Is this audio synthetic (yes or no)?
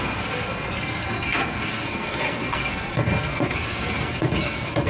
yes